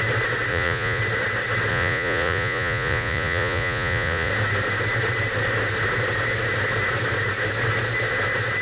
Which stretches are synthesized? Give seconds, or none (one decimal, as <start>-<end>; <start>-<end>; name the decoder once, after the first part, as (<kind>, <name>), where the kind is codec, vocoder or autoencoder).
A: 0.5-1.0 (vocoder, Vocos); 1.7-4.3